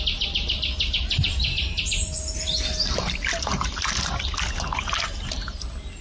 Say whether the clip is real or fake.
real